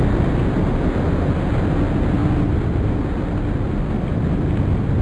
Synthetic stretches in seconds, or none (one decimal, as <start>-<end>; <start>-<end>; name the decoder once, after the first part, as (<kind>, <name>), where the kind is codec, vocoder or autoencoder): none